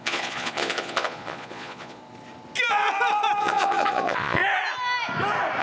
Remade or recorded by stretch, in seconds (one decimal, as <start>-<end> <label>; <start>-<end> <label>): 0.0-2.0 remade; 2.0-3.4 recorded; 3.4-4.4 remade; 4.4-5.6 recorded